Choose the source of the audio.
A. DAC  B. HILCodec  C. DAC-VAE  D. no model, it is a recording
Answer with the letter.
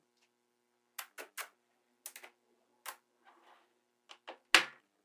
D